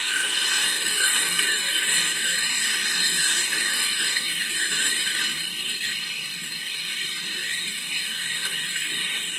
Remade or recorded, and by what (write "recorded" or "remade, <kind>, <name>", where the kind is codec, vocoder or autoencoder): remade, codec, DAC